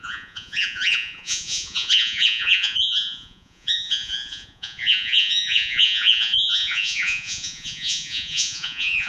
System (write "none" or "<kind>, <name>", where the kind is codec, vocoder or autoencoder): vocoder, Vocos